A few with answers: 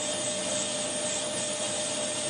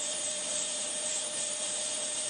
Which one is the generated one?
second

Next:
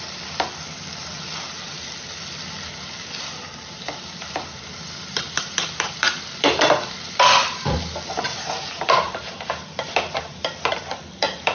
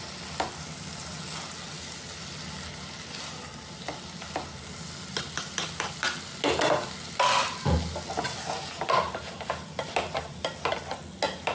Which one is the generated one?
first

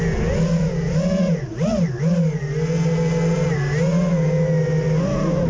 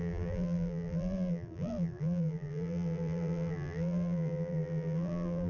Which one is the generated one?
second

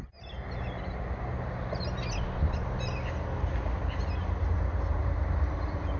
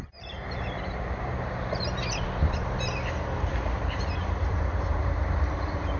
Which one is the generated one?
second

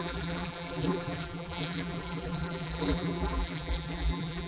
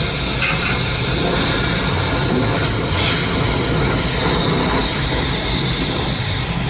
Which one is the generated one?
first